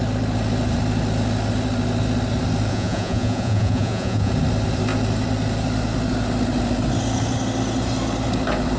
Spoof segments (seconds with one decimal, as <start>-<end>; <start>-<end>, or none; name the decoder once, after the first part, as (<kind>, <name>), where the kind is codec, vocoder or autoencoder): 2.7-4.3 (vocoder, Vocos)

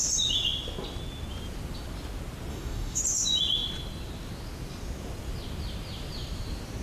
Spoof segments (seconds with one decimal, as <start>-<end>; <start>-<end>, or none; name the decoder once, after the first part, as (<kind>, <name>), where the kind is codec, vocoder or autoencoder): 2.5-3.0 (codec, DAC)

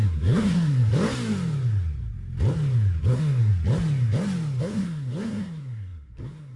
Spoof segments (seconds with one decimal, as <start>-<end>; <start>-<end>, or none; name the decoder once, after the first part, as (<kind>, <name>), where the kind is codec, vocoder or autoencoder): 0.0-0.9 (codec, SNAC); 3.0-3.5; 4.6-6.6

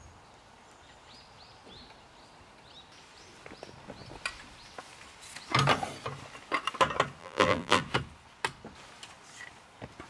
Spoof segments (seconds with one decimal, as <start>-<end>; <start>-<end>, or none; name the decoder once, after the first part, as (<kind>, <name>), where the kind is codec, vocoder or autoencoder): 7.2-7.8 (vocoder, BigVGAN v2)

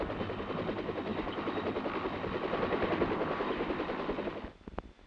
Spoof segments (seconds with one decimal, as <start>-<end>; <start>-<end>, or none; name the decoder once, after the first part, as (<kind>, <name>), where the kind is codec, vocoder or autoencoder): none

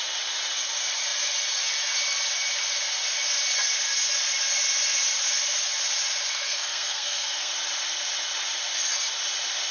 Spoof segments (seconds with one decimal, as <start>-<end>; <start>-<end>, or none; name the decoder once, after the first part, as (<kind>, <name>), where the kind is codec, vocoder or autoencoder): 6.3-7.5 (codec, SNAC)